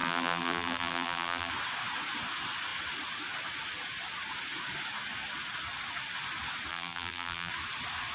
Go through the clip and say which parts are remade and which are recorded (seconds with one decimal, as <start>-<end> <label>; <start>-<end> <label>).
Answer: 0.0-1.5 remade; 1.5-6.7 recorded; 6.7-7.5 remade; 7.5-8.1 recorded